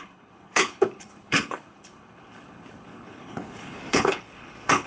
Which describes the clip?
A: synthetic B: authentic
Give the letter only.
A